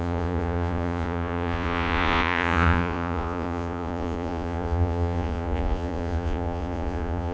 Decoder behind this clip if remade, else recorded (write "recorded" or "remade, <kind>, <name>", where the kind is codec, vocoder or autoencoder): remade, vocoder, Vocos